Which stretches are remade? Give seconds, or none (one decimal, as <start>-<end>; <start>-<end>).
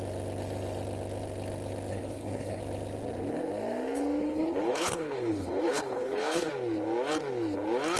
1.9-2.6; 4.2-6.5